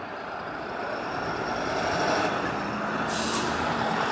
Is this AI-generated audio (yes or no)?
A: no